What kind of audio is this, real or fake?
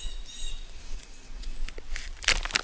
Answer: real